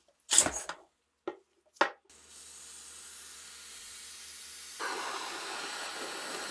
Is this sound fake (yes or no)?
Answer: no